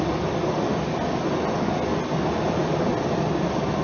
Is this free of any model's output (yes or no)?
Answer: yes